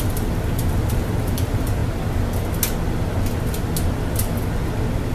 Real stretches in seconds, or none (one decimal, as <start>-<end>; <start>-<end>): 1.8-5.1